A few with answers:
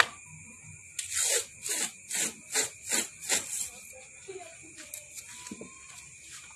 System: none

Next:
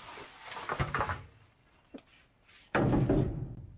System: none